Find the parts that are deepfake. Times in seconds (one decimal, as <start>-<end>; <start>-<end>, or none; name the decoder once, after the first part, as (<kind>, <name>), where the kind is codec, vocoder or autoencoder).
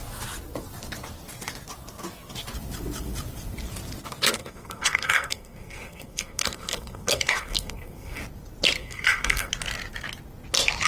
4.4-8.2 (codec, SNAC); 8.8-9.5